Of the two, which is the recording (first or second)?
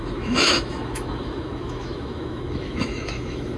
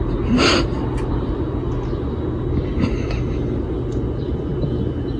second